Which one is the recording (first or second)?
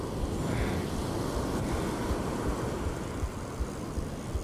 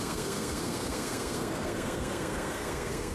first